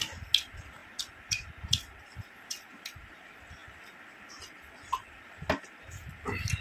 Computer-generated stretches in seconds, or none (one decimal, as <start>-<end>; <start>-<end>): 0.8-2.8